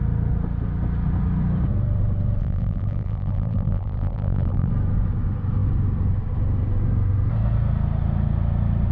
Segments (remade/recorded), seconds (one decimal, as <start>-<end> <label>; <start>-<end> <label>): 0.0-2.4 recorded; 2.4-4.7 remade; 4.7-8.9 recorded